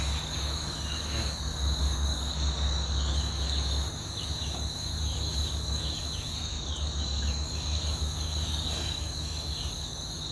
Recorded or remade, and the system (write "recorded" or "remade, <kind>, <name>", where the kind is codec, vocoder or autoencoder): remade, codec, DAC